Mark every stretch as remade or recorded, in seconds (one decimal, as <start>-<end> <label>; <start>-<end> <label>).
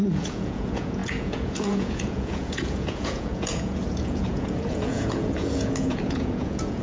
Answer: 0.0-6.8 remade